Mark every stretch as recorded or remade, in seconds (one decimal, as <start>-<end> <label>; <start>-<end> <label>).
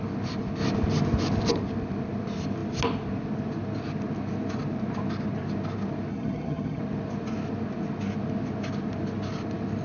0.0-6.1 recorded; 6.1-6.8 remade; 6.8-9.8 recorded